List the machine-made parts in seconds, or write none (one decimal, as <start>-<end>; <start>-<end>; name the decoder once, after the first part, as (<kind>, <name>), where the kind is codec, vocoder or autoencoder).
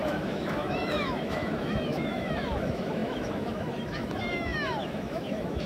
0.0-5.7 (autoencoder, DAC-VAE)